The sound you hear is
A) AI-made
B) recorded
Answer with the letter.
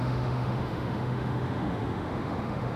A